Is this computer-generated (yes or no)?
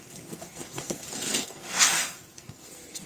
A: yes